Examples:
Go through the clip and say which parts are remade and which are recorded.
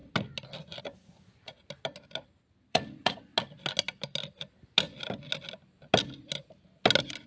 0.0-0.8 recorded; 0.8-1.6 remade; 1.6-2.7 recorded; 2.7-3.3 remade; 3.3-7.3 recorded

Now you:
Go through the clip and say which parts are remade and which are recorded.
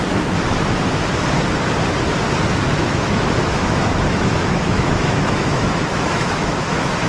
0.0-2.7 recorded; 2.7-7.1 remade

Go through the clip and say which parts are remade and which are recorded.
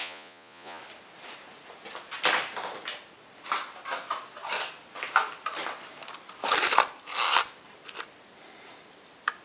0.0-0.8 remade; 0.8-9.4 recorded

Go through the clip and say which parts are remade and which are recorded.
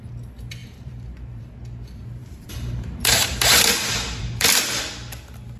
0.0-0.6 recorded; 0.6-1.4 remade; 1.4-2.2 recorded; 2.2-4.8 remade; 4.8-5.6 recorded